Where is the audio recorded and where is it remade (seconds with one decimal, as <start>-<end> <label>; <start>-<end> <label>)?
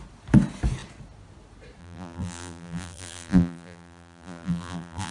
0.0-1.8 recorded; 1.8-5.1 remade